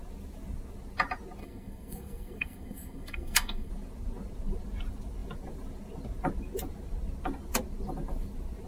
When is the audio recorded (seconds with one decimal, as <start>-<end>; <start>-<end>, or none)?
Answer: 0.0-1.4; 3.7-8.7